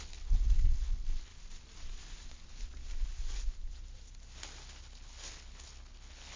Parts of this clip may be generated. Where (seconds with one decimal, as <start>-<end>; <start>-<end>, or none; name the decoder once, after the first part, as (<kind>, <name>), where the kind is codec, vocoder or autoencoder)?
0.0-1.3 (codec, HILCodec); 4.7-6.4